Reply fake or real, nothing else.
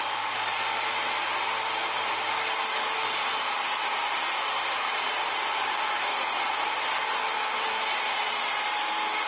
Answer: real